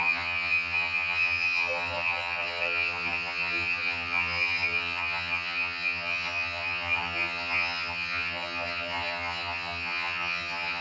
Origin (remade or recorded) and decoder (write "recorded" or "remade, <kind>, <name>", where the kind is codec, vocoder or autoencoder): remade, vocoder, HiFi-GAN